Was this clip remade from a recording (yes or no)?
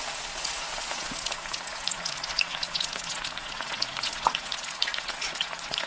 yes